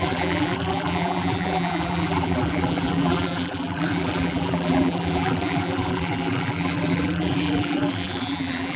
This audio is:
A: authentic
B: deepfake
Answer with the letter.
B